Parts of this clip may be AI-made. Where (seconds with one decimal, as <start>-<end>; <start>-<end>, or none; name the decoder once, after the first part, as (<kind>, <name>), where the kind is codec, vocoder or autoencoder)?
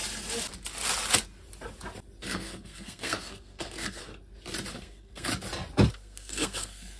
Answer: 2.2-4.1 (codec, SNAC); 4.7-5.3; 5.9-7.0